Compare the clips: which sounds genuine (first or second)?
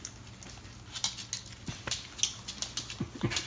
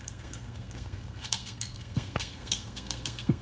first